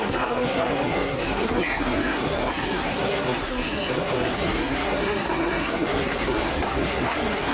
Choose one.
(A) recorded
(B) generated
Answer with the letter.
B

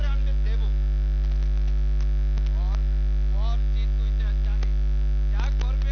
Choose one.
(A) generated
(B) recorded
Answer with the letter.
B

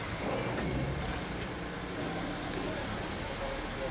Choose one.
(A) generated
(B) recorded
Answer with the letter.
B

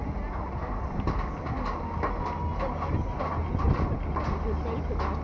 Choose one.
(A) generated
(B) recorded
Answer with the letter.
B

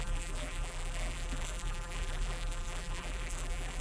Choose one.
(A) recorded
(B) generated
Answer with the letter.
B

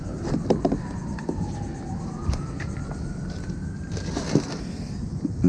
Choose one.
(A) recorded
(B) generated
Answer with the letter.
A